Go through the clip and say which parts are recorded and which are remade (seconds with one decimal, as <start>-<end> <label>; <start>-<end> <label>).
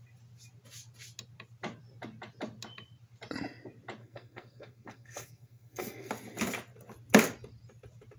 0.0-4.0 recorded; 4.0-6.1 remade; 6.1-8.2 recorded